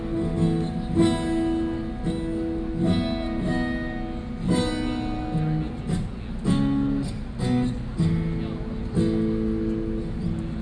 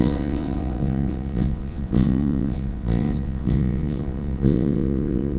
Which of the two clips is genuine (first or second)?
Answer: first